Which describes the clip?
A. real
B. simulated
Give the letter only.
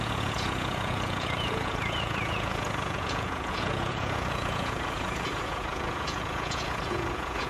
B